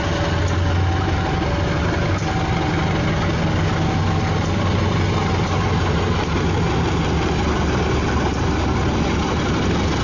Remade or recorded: recorded